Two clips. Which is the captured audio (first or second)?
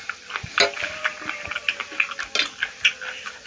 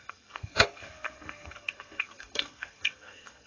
first